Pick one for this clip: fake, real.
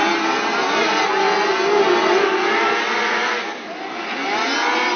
real